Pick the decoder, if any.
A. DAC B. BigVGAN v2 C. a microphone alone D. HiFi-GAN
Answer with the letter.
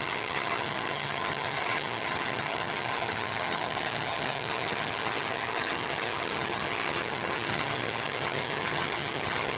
D